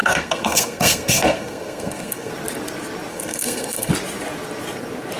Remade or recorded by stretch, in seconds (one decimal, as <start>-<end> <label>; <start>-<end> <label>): 0.0-2.3 remade; 2.3-3.1 recorded; 3.1-3.9 remade; 3.9-5.2 recorded